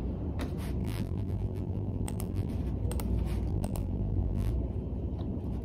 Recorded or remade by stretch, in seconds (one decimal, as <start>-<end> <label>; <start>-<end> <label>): 0.0-0.8 recorded; 0.8-2.5 remade; 2.5-3.5 recorded; 3.5-4.5 remade; 4.5-5.6 recorded